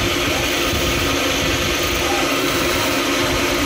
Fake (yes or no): no